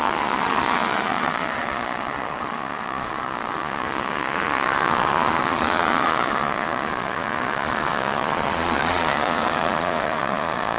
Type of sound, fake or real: fake